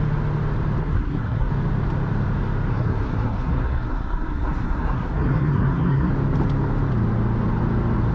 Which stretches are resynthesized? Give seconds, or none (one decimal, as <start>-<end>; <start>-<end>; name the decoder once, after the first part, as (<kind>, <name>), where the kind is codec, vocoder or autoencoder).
0.8-1.5 (codec, SNAC); 2.7-6.1